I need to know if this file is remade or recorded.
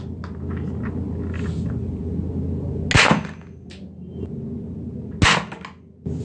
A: recorded